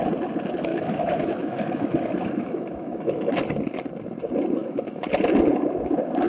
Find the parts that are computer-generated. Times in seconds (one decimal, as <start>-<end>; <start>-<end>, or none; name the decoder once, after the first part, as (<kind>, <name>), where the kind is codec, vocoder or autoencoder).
0.7-3.3 (autoencoder, DAC-VAE); 4.6-5.1